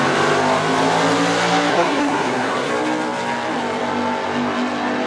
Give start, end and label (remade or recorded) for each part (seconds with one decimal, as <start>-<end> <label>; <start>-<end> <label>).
0.0-1.7 recorded; 1.7-2.7 remade; 2.7-5.1 recorded